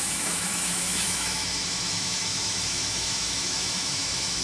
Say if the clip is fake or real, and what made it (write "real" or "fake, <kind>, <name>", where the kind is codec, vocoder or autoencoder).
fake, autoencoder, DAC-VAE